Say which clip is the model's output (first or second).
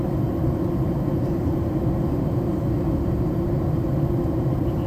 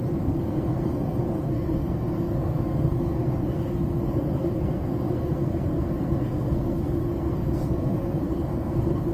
second